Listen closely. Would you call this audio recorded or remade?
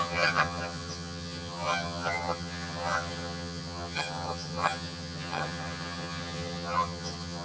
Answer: remade